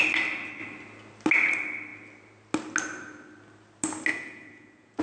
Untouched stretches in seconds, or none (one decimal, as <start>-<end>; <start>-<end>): 0.0-4.1